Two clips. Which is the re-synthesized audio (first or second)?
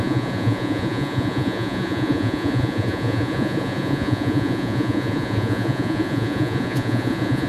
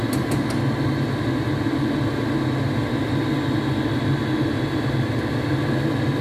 first